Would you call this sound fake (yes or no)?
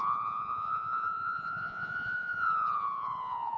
yes